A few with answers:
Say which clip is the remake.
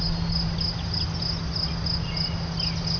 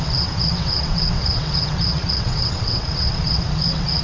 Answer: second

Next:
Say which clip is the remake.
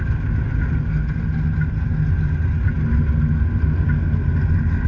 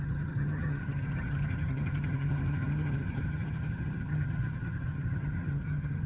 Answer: second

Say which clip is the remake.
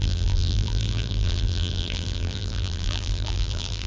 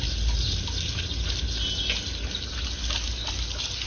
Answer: first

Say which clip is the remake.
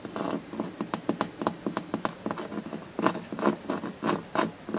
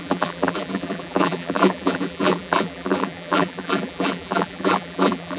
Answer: second